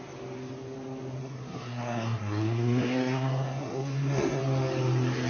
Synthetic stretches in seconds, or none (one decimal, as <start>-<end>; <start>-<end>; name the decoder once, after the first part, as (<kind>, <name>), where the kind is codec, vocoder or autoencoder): 1.2-4.4 (codec, SNAC)